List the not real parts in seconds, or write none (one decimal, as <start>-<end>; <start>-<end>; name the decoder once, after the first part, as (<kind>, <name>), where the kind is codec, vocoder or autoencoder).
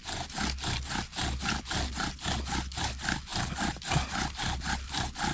none